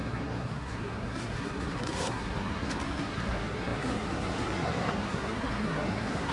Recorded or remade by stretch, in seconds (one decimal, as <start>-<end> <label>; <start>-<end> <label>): 0.0-6.3 remade